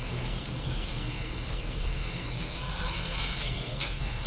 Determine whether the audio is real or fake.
fake